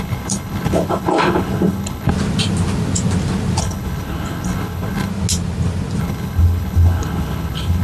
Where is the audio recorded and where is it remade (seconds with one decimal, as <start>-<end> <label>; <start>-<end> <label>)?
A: 0.0-2.1 remade; 2.1-3.6 recorded; 3.6-5.1 remade; 5.1-6.0 recorded; 6.0-7.8 remade